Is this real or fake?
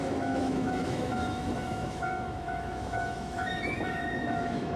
fake